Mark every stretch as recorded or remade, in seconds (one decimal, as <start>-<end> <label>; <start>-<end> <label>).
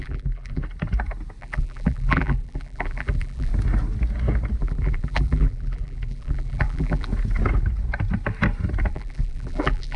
0.0-0.6 remade; 0.6-1.4 recorded; 1.4-3.5 remade; 3.5-4.6 recorded; 4.6-7.1 remade; 7.1-8.9 recorded; 8.9-10.0 remade